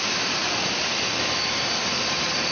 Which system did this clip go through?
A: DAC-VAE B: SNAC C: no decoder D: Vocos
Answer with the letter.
C